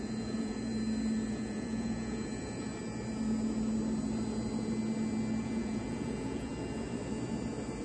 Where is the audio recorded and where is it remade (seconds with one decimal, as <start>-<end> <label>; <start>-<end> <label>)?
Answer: 0.0-0.7 remade; 0.7-1.3 recorded; 1.3-2.7 remade; 2.7-5.4 recorded; 5.4-6.5 remade; 6.5-7.8 recorded